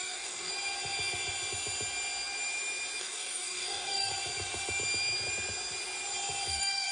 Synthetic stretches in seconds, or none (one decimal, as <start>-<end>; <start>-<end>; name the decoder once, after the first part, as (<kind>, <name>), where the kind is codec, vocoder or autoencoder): 0.0-0.5 (codec, DAC); 3.0-4.1; 6.5-6.9